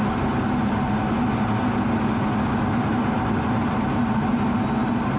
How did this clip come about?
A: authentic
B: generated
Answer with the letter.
A